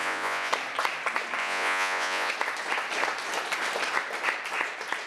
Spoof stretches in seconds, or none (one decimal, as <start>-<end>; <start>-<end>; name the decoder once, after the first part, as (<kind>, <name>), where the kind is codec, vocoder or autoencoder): 0.0-0.5 (vocoder, Vocos); 1.4-2.3